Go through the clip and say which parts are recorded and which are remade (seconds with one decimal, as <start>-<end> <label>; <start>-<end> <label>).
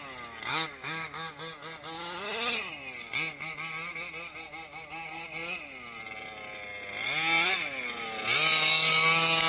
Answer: 0.0-0.5 recorded; 0.5-1.4 remade; 1.4-9.5 recorded